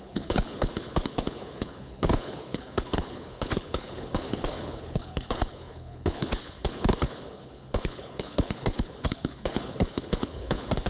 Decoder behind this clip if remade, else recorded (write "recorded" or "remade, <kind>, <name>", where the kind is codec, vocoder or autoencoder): remade, codec, HILCodec